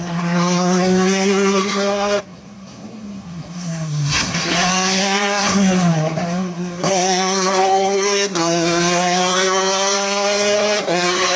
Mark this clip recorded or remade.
remade